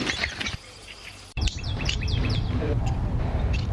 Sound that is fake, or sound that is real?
fake